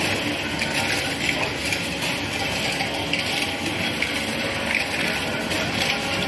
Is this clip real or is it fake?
real